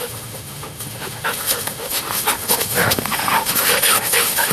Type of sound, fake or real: fake